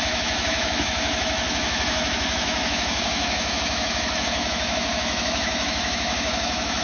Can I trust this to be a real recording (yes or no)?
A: no